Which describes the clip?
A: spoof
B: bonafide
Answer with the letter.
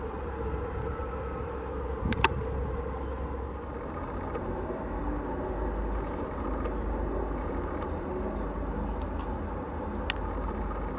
B